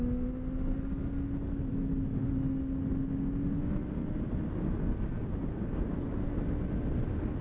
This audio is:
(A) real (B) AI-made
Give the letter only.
A